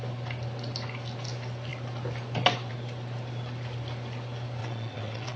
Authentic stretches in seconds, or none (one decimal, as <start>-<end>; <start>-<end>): 0.0-4.6